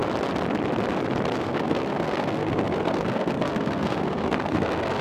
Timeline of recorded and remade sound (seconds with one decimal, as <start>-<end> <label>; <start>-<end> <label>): 0.0-1.4 recorded; 1.4-5.0 remade